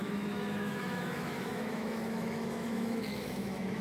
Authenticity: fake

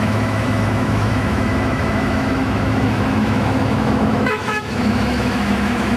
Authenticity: fake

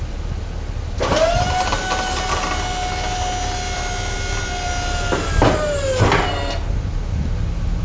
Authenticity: real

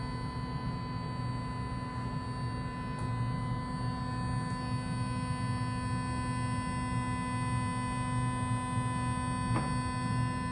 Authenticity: real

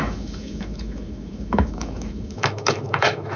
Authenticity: fake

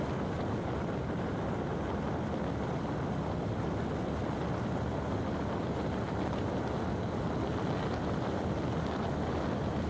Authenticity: real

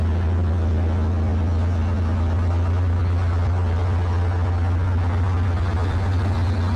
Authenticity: real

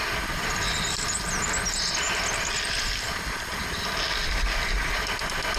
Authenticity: real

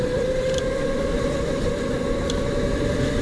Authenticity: real